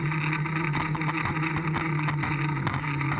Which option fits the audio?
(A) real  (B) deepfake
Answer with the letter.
A